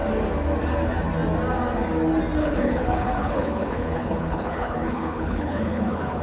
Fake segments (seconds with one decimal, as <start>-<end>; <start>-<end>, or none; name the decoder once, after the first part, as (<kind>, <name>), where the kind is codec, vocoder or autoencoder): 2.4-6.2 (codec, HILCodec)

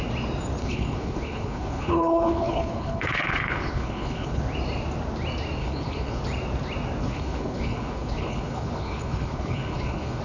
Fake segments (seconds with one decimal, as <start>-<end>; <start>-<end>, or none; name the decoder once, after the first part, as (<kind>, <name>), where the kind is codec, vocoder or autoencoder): 0.6-4.4 (codec, HILCodec); 5.6-6.2; 7.0-10.2

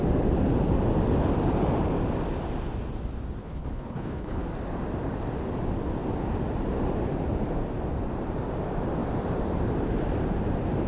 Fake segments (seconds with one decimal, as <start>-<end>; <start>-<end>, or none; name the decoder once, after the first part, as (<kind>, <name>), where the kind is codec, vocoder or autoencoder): 3.4-4.5 (codec, HILCodec)

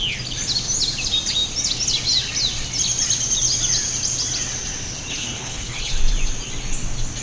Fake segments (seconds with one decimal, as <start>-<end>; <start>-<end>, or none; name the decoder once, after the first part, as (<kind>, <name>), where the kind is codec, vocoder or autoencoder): 5.1-6.0 (codec, HILCodec)